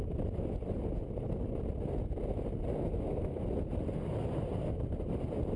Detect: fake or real real